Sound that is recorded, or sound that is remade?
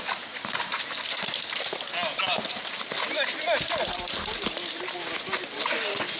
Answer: recorded